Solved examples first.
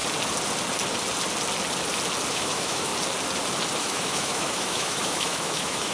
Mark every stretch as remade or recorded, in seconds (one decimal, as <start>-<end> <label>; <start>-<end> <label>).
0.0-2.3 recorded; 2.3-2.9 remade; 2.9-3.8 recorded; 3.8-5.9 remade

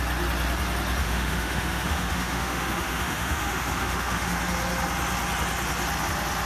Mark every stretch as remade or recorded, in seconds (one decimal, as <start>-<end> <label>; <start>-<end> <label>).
0.0-1.0 recorded; 1.0-4.4 remade; 4.4-6.5 recorded

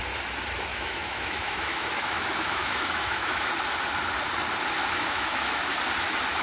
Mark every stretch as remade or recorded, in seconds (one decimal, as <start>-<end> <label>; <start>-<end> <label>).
0.0-0.7 recorded; 0.7-3.5 remade; 3.5-4.8 recorded; 4.8-5.7 remade; 5.7-6.4 recorded